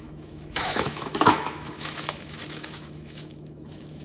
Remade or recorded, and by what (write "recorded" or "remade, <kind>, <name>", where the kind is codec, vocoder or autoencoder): remade, autoencoder, DAC-VAE